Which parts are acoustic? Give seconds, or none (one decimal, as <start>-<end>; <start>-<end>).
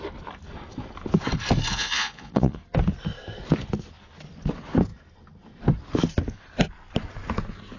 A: 0.0-1.7; 2.6-7.8